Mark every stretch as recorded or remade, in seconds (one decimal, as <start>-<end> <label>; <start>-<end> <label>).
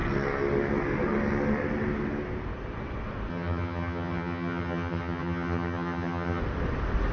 0.0-3.3 recorded; 3.3-6.4 remade; 6.4-7.1 recorded